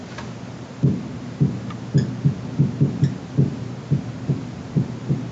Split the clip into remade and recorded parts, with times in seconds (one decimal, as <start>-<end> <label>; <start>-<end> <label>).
0.0-5.3 recorded